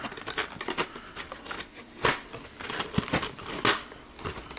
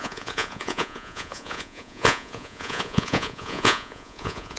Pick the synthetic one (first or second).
second